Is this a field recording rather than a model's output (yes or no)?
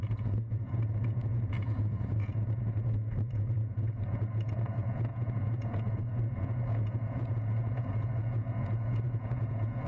no